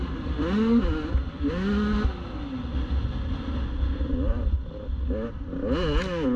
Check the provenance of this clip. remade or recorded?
recorded